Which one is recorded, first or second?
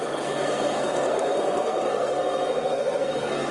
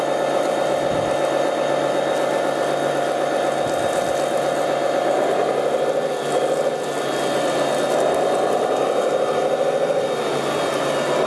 second